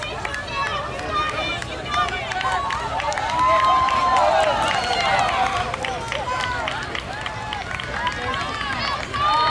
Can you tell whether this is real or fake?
real